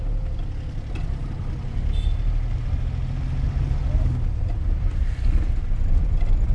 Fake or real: real